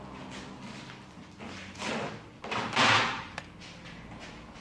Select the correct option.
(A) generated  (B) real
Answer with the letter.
B